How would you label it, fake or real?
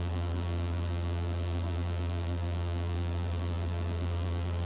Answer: fake